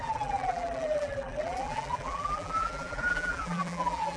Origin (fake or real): fake